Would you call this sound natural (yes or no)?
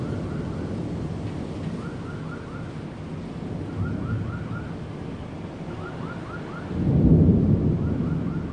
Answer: yes